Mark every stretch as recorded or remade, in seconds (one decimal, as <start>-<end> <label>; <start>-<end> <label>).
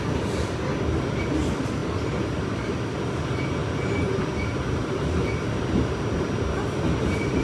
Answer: 0.0-7.4 recorded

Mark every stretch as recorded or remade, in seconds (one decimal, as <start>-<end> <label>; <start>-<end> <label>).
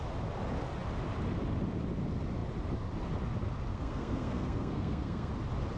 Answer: 0.0-3.7 recorded; 3.7-5.3 remade; 5.3-5.8 recorded